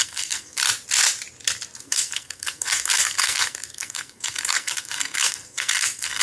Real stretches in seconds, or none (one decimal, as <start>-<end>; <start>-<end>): 0.6-1.8